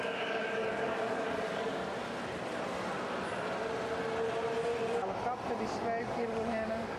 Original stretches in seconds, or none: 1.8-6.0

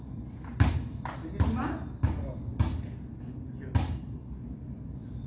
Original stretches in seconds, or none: 0.0-5.3